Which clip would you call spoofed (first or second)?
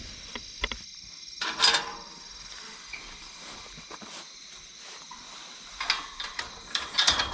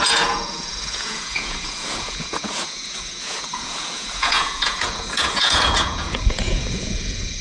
second